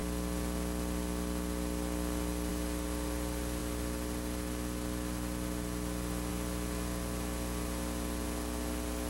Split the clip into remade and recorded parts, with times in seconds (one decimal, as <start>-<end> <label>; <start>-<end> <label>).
0.0-9.1 recorded